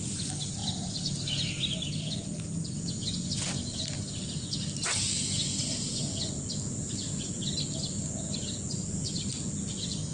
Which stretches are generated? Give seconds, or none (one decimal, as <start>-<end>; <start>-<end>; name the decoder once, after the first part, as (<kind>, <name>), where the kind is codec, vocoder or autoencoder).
none